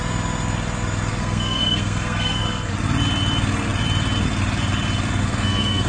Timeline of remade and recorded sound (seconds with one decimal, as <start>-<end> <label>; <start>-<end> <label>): 0.0-1.1 recorded; 1.1-2.7 remade; 2.7-5.2 recorded; 5.2-5.9 remade